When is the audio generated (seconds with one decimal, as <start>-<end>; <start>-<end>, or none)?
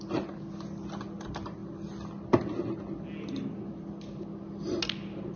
none